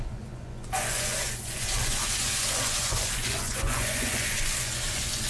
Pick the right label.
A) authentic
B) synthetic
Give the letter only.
B